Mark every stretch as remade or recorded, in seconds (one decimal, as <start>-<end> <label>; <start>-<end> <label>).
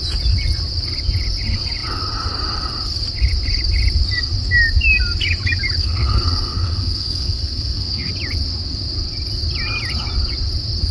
0.0-5.8 recorded; 5.8-8.1 remade; 8.1-10.9 recorded